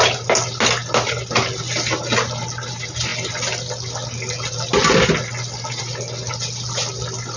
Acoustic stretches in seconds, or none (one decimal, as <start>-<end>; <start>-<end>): 0.0-7.4